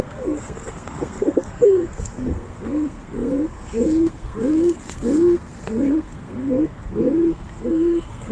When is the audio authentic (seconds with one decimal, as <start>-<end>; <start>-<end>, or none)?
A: none